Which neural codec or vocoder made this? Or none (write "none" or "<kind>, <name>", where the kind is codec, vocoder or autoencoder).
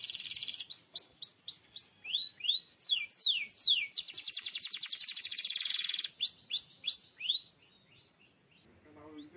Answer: none